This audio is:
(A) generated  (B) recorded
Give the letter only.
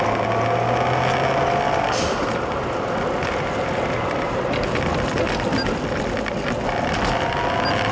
B